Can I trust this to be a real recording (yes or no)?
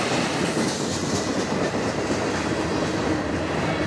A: yes